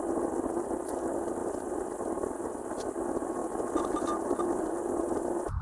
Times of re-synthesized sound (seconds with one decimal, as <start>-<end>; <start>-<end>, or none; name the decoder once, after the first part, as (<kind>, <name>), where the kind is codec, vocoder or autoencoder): none